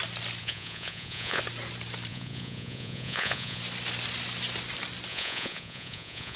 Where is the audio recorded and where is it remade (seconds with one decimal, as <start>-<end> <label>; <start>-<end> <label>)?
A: 0.0-0.4 recorded; 0.4-1.4 remade; 1.4-2.1 recorded; 2.1-3.6 remade; 3.6-5.1 recorded; 5.1-6.4 remade